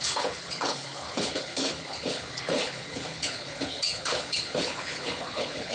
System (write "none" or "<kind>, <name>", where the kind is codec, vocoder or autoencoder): codec, HILCodec